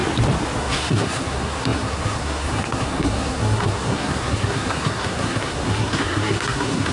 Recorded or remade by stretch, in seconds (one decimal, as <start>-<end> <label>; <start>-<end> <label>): 0.0-0.6 recorded; 0.6-6.9 remade